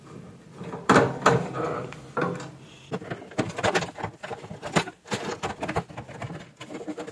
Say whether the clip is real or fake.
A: real